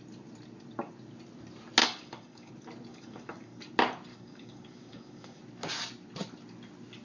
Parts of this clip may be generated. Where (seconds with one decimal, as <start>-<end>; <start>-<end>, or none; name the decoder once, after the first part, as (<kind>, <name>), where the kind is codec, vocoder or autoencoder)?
1.8-2.5 (codec, DAC); 2.9-3.6; 4.1-5.4